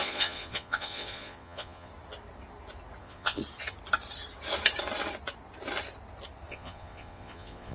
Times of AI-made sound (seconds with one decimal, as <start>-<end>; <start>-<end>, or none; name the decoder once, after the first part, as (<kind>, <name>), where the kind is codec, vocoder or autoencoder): 0.0-1.9 (vocoder, Vocos); 3.0-3.4; 6.5-7.7